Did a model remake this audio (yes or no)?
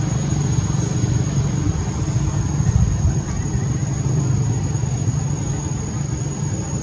no